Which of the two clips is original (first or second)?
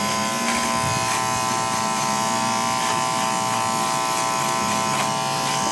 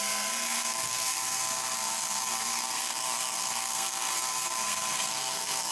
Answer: first